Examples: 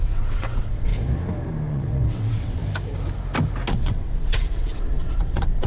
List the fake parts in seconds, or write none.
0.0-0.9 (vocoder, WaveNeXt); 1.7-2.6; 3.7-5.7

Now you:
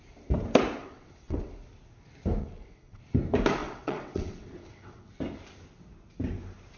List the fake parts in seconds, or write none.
0.8-1.5 (vocoder, WaveNeXt); 2.4-3.0; 3.6-5.1

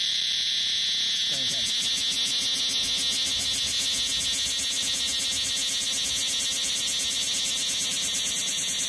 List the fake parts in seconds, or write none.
none

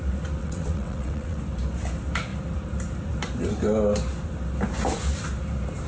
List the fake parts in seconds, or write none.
0.4-1.4 (vocoder, WaveNeXt)

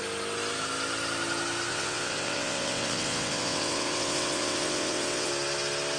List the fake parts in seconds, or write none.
1.7-5.3 (vocoder, WaveNeXt)

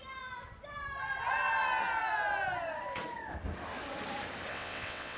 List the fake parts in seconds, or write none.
4.5-5.2 (vocoder, WaveNeXt)

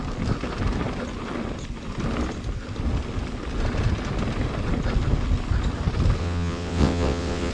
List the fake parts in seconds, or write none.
6.2-7.5 (vocoder, WaveNeXt)